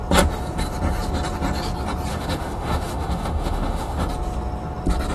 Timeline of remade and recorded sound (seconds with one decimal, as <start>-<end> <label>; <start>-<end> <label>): 0.0-2.1 recorded; 2.1-4.1 remade; 4.1-5.1 recorded